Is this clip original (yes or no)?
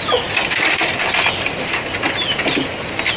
yes